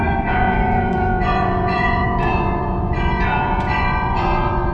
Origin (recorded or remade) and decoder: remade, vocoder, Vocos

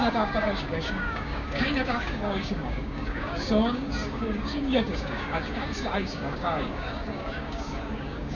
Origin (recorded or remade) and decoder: remade, codec, DAC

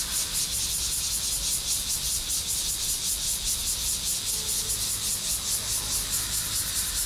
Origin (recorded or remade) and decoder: recorded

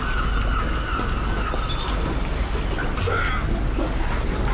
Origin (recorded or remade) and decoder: recorded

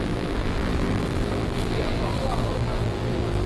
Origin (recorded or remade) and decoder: remade, vocoder, BigVGAN v2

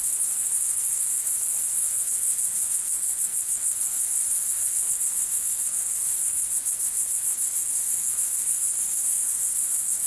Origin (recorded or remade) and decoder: remade, codec, SNAC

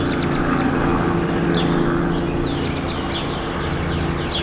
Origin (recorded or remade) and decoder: recorded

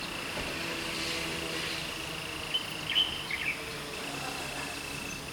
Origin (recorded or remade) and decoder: recorded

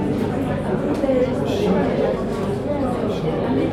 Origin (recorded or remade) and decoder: recorded